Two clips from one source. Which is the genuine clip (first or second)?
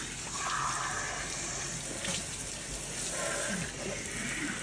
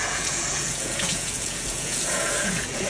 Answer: first